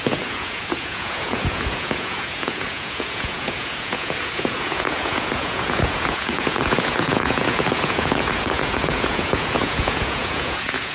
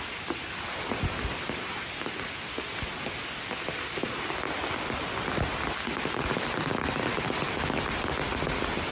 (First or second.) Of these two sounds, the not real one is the first